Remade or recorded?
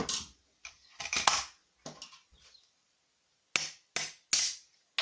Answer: recorded